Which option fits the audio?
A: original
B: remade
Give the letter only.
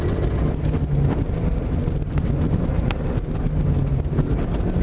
A